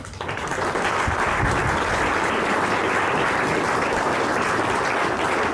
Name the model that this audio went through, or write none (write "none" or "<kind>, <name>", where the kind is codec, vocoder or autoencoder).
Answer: none